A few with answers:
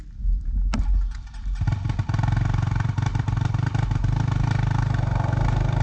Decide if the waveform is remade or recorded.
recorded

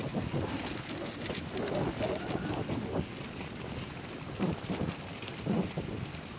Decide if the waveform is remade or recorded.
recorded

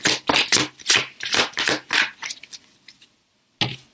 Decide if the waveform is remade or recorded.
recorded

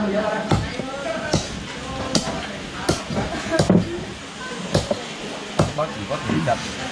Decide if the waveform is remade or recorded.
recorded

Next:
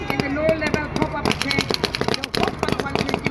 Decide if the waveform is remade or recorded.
recorded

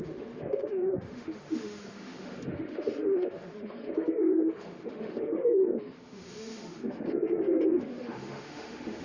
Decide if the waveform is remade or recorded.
remade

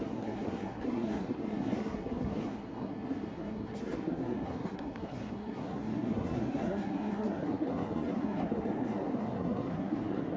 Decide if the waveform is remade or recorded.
remade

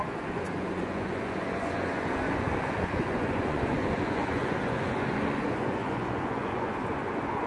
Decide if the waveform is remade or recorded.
remade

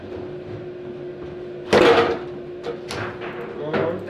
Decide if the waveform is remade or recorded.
recorded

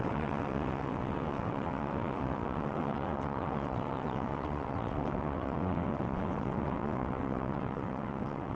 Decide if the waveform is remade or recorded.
remade